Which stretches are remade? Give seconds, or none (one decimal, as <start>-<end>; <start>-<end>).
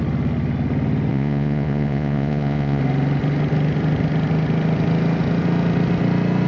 1.1-2.8